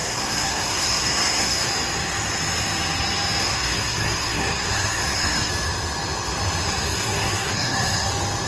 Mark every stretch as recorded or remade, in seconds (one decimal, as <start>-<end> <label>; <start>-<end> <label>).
0.0-1.7 remade; 1.7-3.4 recorded; 3.4-5.5 remade; 5.5-6.6 recorded; 6.6-8.1 remade; 8.1-8.5 recorded